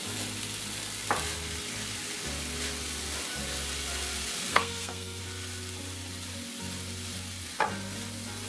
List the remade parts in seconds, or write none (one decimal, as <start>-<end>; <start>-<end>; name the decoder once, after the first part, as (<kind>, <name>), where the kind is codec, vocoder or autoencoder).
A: 4.5-5.2 (codec, SNAC)